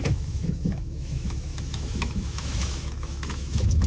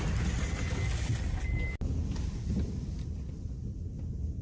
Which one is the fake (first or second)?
first